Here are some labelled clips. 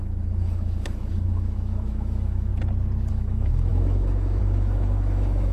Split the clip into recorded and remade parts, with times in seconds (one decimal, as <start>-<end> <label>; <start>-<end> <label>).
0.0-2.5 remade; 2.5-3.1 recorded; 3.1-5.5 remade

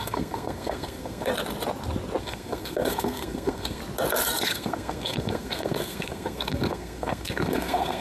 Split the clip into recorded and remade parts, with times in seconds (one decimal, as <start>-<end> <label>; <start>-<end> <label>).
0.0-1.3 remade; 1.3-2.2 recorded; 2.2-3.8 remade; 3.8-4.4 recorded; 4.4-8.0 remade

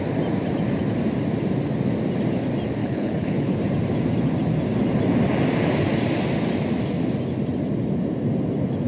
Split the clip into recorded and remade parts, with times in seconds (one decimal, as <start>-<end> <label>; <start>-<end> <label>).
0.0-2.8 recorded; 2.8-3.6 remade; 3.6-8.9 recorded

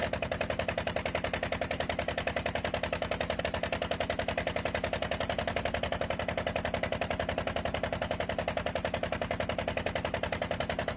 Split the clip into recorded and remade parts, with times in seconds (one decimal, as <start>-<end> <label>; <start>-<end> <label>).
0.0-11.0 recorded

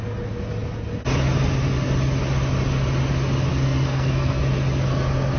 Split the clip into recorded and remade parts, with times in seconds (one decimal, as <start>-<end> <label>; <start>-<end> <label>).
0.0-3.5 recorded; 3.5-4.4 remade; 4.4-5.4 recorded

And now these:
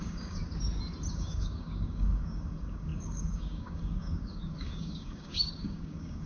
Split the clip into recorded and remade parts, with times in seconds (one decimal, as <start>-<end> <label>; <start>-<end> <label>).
0.0-0.4 remade; 0.4-1.1 recorded; 1.1-6.3 remade